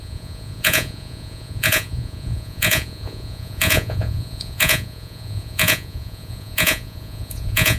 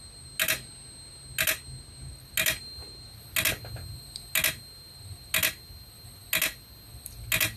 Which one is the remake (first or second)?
first